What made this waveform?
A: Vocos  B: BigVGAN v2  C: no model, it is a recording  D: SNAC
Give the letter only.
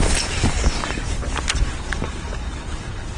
C